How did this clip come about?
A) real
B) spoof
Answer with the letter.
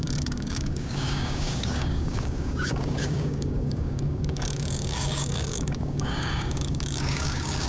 B